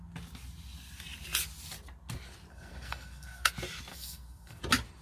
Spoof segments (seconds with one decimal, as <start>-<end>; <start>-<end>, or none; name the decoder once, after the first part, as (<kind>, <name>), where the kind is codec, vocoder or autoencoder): 2.5-3.5 (codec, SNAC); 3.9-4.6